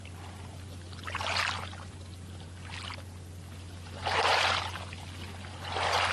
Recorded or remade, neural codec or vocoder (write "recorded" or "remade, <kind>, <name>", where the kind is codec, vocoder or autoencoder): recorded